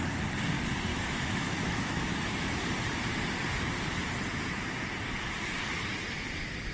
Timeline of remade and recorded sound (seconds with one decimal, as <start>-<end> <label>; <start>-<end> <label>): 0.0-0.9 recorded; 0.9-2.6 remade; 2.6-6.7 recorded